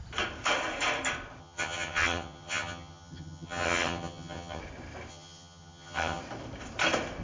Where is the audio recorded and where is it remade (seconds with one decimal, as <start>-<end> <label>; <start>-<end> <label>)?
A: 0.0-1.4 recorded; 1.4-4.6 remade; 4.6-5.1 recorded; 5.1-6.2 remade; 6.2-7.2 recorded